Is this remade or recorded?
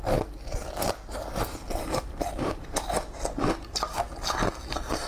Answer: recorded